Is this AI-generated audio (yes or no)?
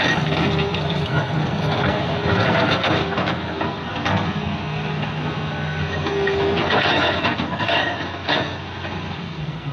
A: yes